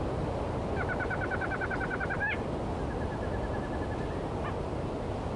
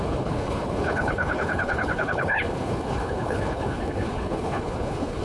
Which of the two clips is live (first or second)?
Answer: first